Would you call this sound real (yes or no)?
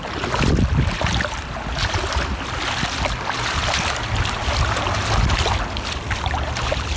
yes